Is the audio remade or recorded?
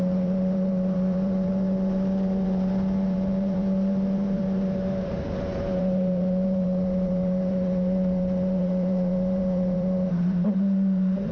remade